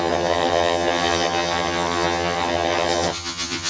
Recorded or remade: remade